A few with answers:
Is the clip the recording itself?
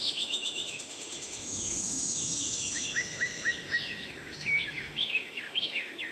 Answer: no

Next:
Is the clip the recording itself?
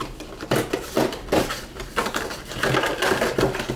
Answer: yes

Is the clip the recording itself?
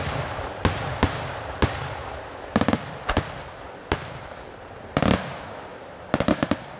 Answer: yes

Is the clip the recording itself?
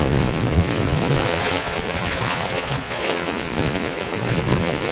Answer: no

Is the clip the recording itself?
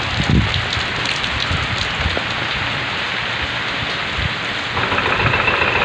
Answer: yes